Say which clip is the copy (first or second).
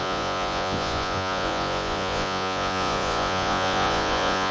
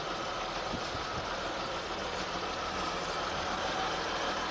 first